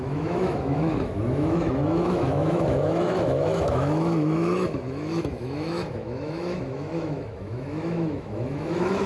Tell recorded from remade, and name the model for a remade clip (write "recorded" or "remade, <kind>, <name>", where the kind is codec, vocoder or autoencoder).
remade, autoencoder, DAC-VAE